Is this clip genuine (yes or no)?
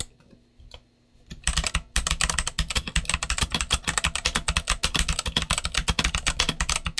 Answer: yes